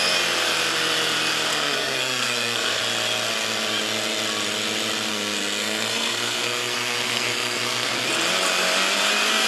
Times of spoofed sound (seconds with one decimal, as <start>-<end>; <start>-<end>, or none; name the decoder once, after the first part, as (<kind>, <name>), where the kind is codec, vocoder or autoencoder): 1.5-2.8 (codec, SNAC); 5.1-7.9